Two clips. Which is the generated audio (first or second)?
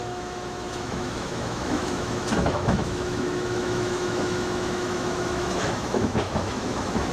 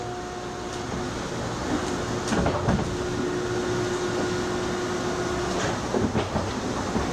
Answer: first